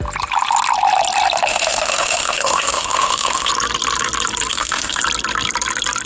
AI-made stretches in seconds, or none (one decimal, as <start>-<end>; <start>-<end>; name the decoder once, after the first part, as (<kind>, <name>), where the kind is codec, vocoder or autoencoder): 1.5-3.5 (autoencoder, DAC-VAE); 4.5-5.0